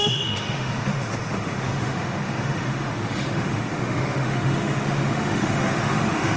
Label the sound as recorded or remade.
remade